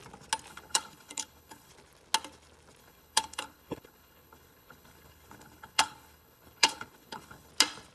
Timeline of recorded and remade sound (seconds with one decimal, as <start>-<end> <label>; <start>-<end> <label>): 0.0-0.5 recorded; 0.5-1.7 remade; 1.7-2.8 recorded; 2.8-7.5 remade; 7.5-7.9 recorded